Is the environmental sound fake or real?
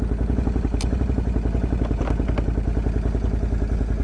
real